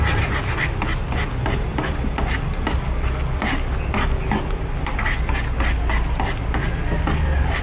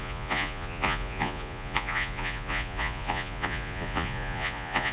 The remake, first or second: second